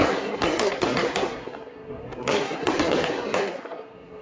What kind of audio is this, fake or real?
fake